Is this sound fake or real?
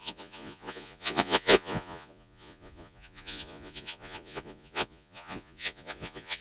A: fake